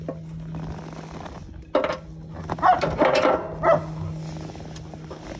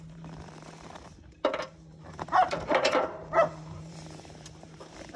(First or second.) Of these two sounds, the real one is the first